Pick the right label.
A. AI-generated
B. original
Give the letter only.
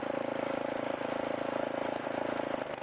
B